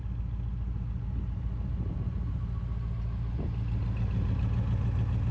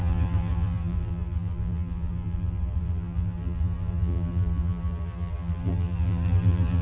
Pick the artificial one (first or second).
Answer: second